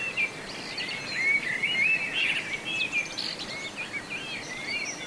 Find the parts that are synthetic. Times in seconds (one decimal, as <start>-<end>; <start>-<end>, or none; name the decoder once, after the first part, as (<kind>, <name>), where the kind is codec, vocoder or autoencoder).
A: none